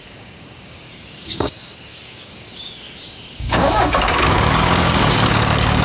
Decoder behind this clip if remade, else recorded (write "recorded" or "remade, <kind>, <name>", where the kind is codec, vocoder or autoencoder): remade, codec, DAC